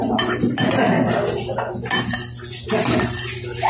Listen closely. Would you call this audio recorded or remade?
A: recorded